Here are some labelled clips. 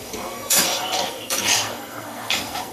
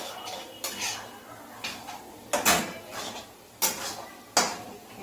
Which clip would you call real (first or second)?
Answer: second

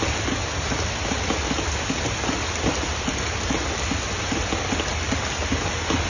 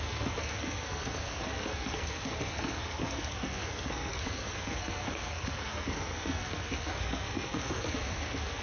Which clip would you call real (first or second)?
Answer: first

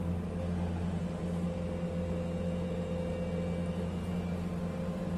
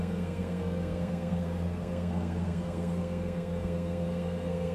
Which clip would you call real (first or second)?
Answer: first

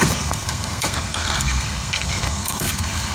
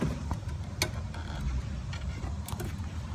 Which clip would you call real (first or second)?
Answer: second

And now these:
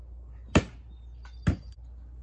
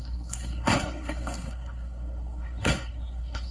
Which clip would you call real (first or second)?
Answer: first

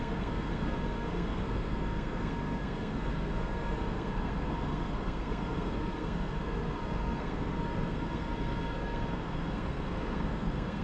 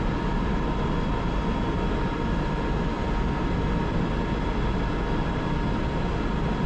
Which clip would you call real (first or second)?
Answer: second